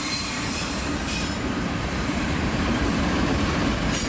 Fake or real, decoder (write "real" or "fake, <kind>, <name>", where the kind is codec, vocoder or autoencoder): fake, vocoder, BigVGAN v2